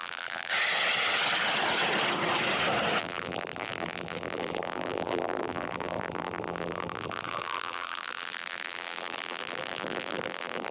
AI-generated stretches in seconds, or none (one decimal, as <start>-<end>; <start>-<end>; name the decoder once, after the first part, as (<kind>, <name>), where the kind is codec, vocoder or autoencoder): 0.0-0.5 (vocoder, BigVGAN v2); 3.0-10.7